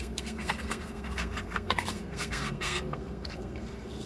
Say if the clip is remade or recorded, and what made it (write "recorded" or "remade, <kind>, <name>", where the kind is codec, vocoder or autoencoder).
remade, codec, SNAC